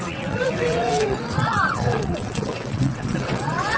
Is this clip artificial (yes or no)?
yes